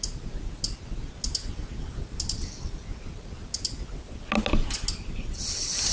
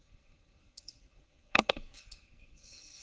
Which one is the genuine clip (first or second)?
first